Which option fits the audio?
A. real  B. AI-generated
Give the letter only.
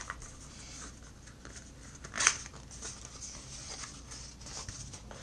A